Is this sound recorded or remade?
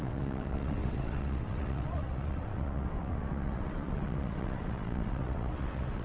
remade